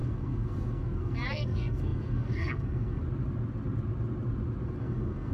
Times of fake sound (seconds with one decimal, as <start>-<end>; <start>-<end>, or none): 0.0-3.0; 4.8-5.3